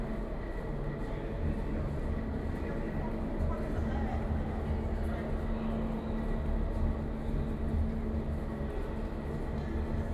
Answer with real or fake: real